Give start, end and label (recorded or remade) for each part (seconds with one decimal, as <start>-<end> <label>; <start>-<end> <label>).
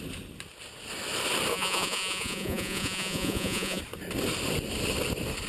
0.0-1.5 recorded; 1.5-3.8 remade; 3.8-5.5 recorded